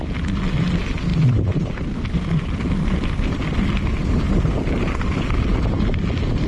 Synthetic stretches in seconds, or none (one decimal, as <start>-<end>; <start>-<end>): 0.0-6.5